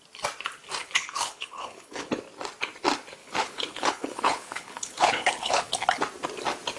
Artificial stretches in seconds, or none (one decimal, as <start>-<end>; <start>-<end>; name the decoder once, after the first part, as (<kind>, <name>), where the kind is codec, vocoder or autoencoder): 0.8-2.1 (codec, HILCodec); 3.2-5.7